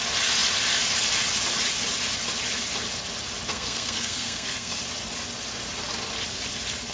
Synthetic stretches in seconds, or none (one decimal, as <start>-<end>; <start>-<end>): 3.5-4.8